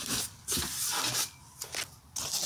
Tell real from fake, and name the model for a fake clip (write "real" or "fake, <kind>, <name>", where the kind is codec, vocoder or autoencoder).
real